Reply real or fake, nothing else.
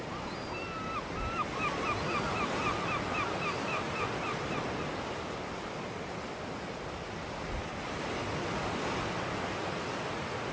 real